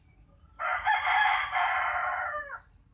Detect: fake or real real